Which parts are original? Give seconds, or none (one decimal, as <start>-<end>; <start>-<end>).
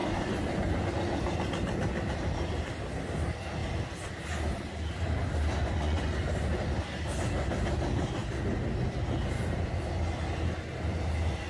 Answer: 0.0-5.6; 6.2-11.5